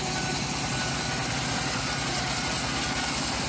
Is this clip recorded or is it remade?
recorded